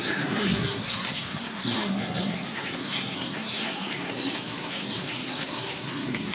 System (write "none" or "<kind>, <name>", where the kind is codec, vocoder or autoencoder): codec, SNAC